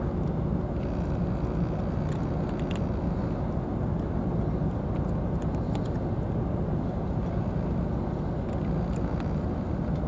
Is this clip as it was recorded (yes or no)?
yes